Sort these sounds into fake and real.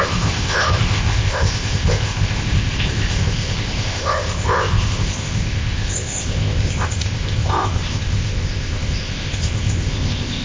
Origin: fake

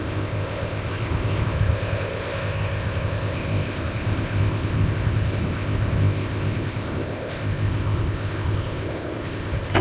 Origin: fake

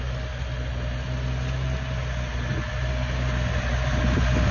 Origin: real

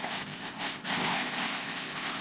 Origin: fake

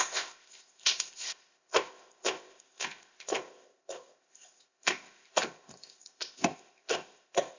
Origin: fake